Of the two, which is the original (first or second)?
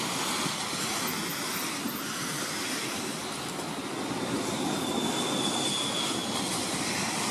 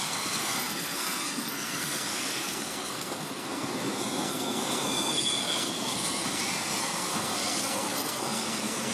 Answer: first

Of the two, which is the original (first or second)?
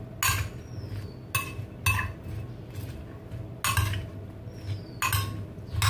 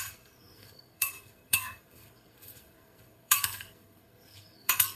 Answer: first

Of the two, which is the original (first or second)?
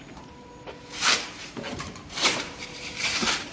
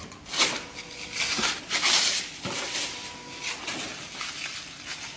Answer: second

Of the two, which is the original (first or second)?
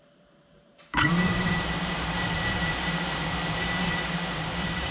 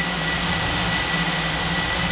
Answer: second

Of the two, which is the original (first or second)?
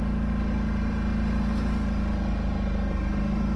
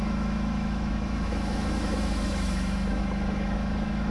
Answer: first